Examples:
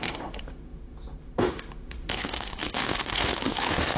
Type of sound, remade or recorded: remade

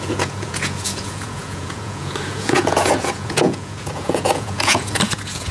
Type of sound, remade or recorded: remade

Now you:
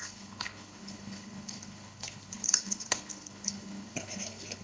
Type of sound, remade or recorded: remade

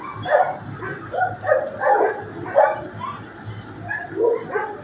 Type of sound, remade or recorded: recorded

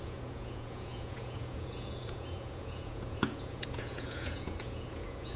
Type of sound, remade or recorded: remade